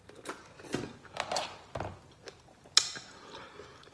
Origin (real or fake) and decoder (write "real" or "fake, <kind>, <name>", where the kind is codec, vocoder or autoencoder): real